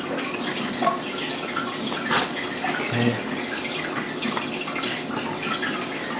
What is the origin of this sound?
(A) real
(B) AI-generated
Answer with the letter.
A